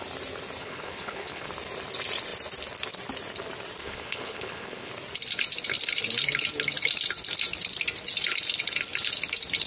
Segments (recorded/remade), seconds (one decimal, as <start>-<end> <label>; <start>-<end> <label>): 0.0-0.6 recorded; 0.6-1.5 remade; 1.5-3.8 recorded; 3.8-4.9 remade; 4.9-9.7 recorded